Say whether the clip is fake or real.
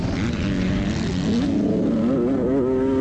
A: real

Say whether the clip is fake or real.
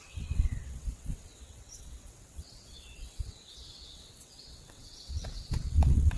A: fake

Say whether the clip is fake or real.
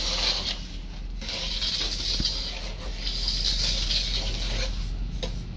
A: real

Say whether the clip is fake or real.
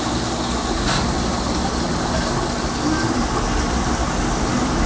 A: real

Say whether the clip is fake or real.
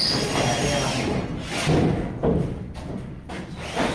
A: real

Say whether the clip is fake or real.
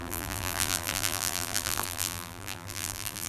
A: fake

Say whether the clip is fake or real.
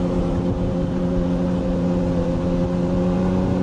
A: fake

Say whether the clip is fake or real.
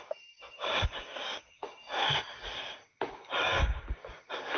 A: fake